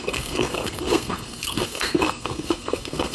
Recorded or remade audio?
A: remade